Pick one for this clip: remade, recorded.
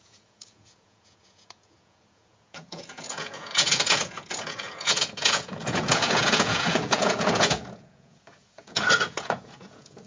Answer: remade